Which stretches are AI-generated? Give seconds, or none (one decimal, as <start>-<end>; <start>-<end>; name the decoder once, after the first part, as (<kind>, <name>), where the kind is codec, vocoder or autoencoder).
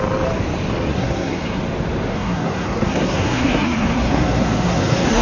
0.9-1.6 (codec, SNAC); 2.1-5.2